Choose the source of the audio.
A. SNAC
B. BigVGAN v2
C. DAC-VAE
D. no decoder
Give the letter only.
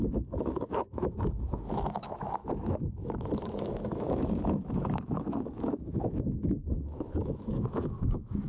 C